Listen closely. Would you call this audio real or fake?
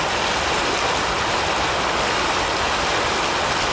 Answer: real